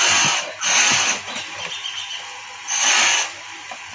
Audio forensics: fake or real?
real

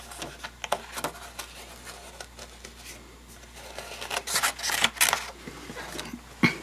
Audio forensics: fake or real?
real